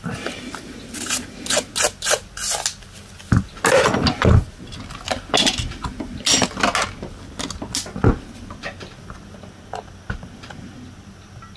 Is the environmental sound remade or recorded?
recorded